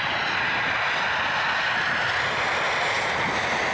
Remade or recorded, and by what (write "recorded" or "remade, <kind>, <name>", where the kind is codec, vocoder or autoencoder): recorded